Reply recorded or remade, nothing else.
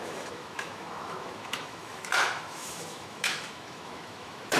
remade